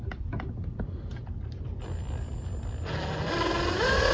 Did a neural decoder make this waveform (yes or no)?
no